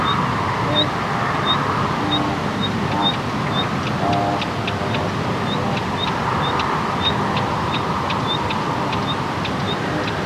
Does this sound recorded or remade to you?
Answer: recorded